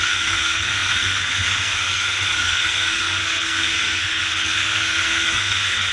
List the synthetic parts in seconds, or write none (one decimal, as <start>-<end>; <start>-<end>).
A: 0.0-5.9